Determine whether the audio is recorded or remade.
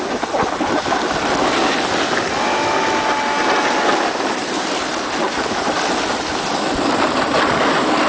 recorded